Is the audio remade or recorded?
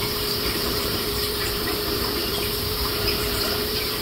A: remade